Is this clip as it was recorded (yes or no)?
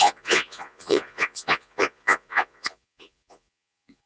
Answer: no